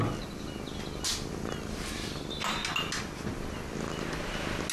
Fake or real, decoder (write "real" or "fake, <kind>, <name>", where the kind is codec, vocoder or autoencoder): real